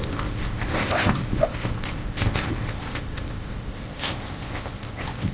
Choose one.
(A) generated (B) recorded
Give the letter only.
A